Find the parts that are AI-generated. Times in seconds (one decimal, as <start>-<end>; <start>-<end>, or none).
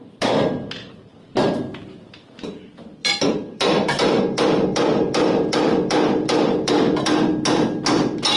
3.0-7.2